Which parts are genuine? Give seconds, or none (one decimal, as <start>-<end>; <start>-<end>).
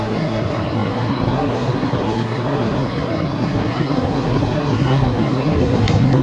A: none